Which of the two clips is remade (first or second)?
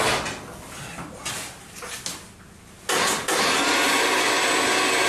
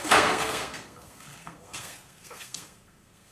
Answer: second